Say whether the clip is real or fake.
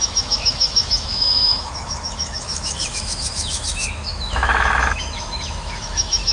fake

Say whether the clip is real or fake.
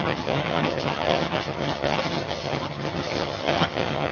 fake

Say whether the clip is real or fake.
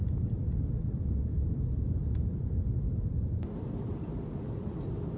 fake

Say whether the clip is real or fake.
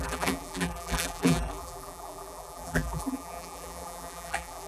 fake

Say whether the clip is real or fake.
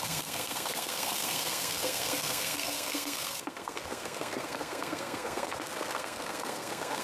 fake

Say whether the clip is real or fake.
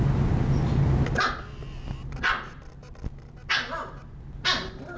real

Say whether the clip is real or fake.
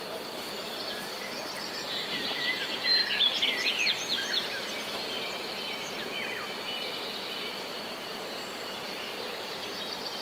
fake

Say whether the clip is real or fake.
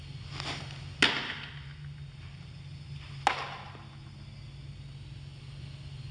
real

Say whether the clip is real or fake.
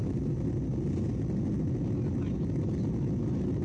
real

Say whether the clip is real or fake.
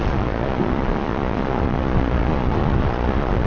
fake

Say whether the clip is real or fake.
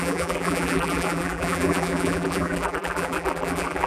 fake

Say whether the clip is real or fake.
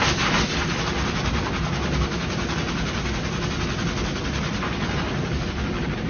real